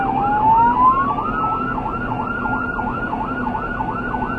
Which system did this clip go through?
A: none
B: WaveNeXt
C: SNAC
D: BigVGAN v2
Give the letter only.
A